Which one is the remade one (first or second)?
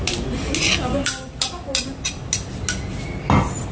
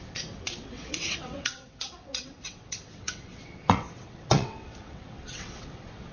second